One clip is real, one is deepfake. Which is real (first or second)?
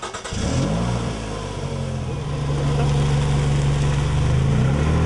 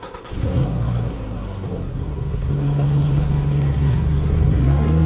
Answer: first